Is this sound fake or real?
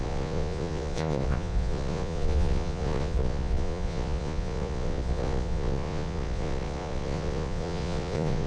fake